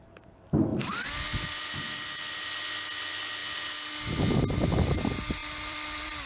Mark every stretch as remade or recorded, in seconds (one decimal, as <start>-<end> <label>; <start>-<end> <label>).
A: 0.0-0.7 recorded; 0.7-1.8 remade; 1.8-5.4 recorded; 5.4-6.3 remade